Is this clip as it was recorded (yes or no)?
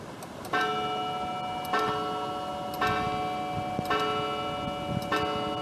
yes